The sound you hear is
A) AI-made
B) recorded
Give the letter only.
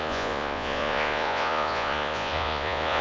A